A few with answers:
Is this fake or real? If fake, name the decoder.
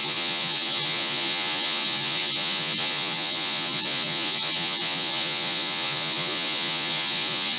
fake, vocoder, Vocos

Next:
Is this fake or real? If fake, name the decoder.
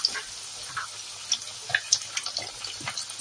real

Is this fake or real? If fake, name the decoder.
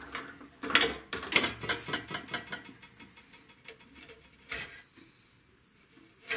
real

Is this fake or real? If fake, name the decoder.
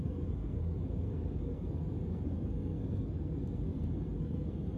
fake, codec, SNAC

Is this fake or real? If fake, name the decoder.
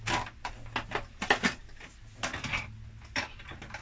real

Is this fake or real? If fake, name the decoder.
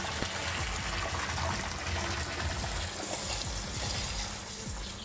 real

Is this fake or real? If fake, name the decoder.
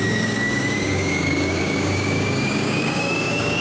fake, codec, DAC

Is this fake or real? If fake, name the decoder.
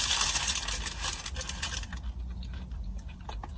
real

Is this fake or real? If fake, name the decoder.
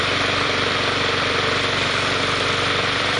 fake, vocoder, BigVGAN v2